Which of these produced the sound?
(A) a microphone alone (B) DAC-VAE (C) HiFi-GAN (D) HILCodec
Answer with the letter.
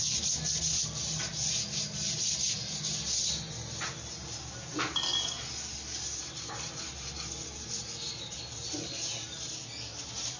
A